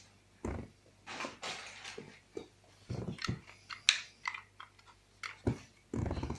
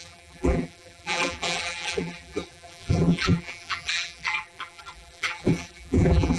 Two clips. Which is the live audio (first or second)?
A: first